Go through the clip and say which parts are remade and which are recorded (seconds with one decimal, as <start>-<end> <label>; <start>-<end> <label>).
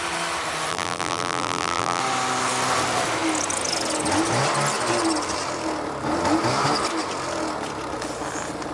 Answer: 0.0-0.7 recorded; 0.7-2.0 remade; 2.0-8.7 recorded